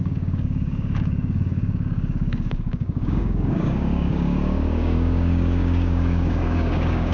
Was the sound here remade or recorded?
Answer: remade